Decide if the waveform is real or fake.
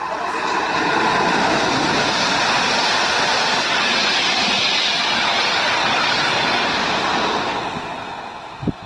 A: real